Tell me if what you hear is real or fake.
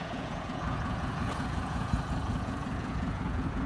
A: fake